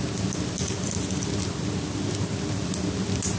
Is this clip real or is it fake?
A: real